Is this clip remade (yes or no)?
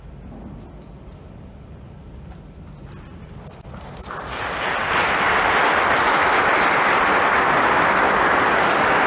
no